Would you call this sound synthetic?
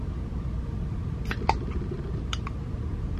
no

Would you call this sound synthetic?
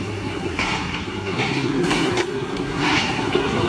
yes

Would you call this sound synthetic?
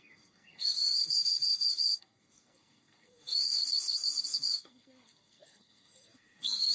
yes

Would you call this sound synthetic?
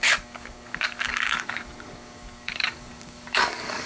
yes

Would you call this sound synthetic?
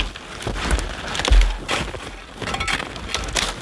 no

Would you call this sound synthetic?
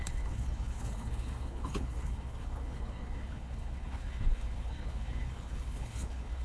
yes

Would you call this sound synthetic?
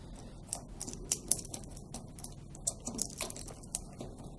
no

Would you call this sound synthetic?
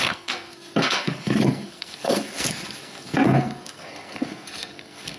yes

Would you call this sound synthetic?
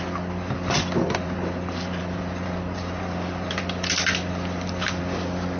no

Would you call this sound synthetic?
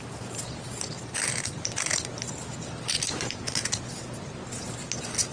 no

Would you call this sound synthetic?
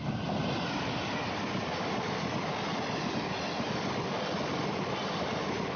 no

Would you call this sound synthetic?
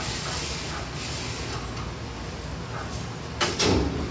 no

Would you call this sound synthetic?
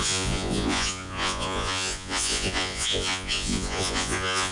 yes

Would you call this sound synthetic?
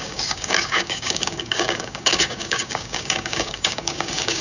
yes